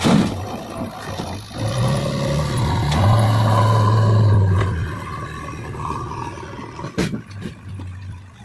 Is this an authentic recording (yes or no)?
yes